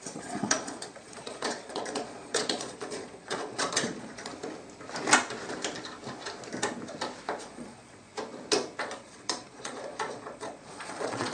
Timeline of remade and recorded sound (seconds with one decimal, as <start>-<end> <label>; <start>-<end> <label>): 0.0-4.3 remade; 4.3-7.4 recorded; 7.4-8.1 remade; 8.1-8.8 recorded; 8.8-11.3 remade